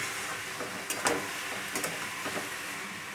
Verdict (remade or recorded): recorded